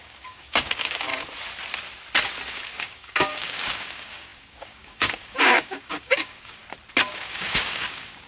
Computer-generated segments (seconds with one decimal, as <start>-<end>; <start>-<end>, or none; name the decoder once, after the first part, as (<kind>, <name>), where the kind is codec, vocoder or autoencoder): 0.0-1.1 (codec, DAC); 2.5-6.6; 7.1-8.3